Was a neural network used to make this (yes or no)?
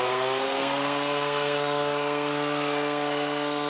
yes